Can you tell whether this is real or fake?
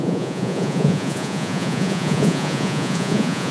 fake